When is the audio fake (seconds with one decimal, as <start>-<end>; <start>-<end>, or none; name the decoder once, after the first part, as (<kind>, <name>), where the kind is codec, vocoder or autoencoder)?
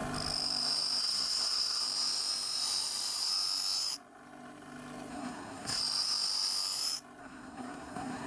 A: 1.0-1.8 (codec, SNAC); 5.1-5.8; 7.2-8.3